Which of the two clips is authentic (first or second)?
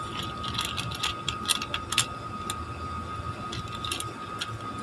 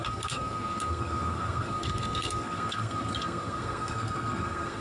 first